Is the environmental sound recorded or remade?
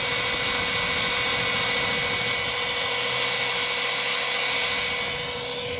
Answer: recorded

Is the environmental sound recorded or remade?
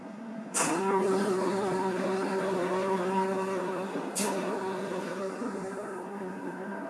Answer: remade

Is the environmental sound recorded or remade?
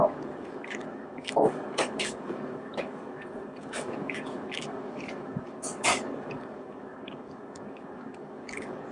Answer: remade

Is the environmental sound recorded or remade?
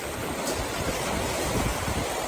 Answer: recorded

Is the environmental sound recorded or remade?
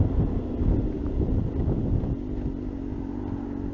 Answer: recorded